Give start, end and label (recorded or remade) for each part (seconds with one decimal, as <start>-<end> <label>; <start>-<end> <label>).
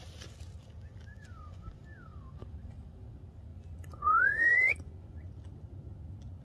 0.0-1.1 recorded; 1.1-1.7 remade; 1.7-3.5 recorded; 3.5-5.3 remade; 5.3-6.4 recorded